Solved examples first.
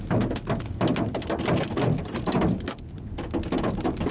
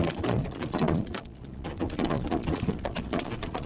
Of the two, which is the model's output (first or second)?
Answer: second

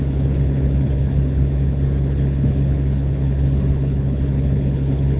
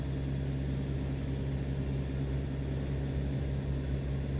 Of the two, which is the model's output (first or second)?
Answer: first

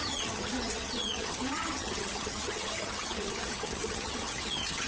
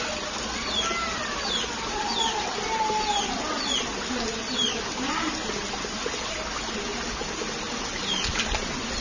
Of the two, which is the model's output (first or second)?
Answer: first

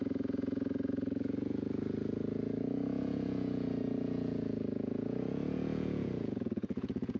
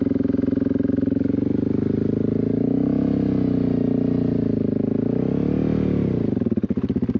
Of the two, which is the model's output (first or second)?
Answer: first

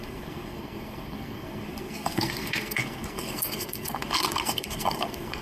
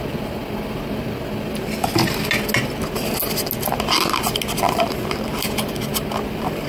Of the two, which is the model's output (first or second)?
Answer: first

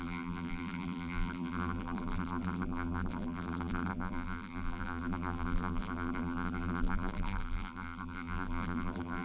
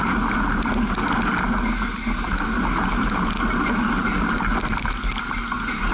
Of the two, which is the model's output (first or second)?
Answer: first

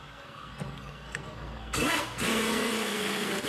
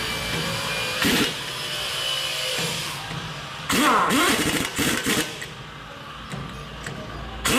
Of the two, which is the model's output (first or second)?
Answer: first